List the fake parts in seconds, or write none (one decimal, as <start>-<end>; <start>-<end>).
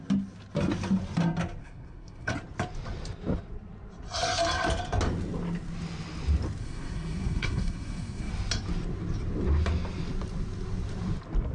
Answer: 1.6-2.3; 6.6-8.3